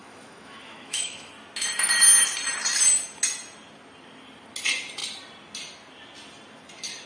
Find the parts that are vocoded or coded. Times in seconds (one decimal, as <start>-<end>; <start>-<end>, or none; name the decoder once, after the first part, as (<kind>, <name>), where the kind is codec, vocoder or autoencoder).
0.0-1.3 (autoencoder, DAC-VAE)